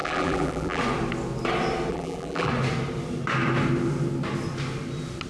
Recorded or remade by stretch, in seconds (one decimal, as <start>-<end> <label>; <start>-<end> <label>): 0.0-0.8 remade; 0.8-1.9 recorded; 1.9-2.5 remade; 2.5-5.3 recorded